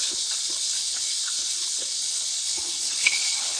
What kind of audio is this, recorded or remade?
remade